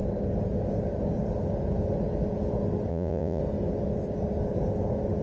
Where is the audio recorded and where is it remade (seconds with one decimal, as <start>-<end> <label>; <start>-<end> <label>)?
0.0-2.9 recorded; 2.9-3.4 remade; 3.4-5.2 recorded